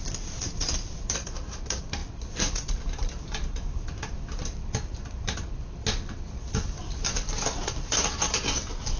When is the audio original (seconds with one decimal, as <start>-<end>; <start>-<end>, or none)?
0.0-9.0